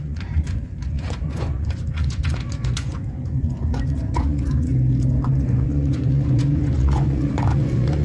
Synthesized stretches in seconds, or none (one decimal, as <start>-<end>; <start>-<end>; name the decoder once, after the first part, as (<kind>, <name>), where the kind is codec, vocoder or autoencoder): 0.0-4.7 (vocoder, Vocos); 5.3-8.0